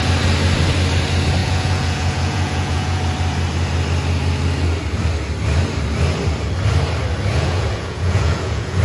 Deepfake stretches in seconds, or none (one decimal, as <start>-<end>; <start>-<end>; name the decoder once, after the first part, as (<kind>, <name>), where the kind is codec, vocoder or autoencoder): 1.4-3.0 (vocoder, Vocos); 7.3-8.8